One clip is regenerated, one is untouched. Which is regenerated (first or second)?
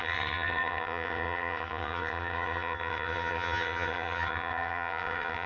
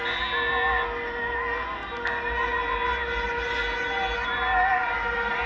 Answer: first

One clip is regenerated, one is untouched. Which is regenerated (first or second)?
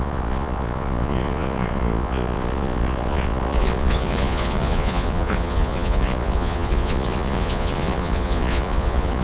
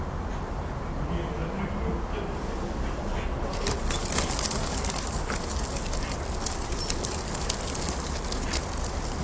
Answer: first